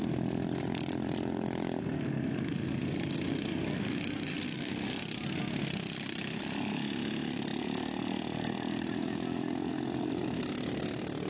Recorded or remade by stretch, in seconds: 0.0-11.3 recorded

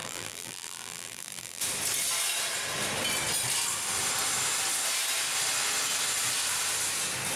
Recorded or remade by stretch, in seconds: 0.0-1.6 remade; 1.6-7.4 recorded